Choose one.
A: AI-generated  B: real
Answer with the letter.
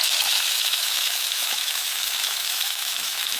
A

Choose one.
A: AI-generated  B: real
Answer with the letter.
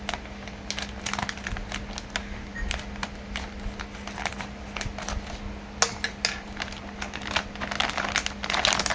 B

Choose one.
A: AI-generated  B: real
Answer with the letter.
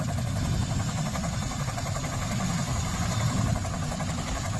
B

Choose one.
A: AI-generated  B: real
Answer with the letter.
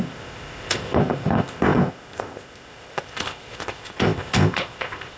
A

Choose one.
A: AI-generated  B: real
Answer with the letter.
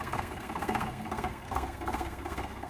A